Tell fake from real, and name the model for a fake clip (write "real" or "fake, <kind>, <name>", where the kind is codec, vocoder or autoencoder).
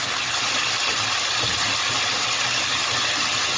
real